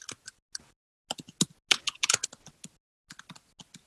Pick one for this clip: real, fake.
real